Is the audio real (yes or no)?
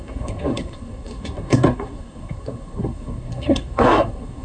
no